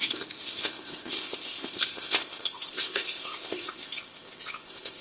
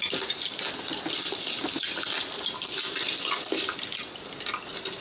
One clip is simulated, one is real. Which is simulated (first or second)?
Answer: first